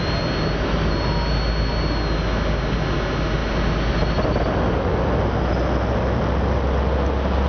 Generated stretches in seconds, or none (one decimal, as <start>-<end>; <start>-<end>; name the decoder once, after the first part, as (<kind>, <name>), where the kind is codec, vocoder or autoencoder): none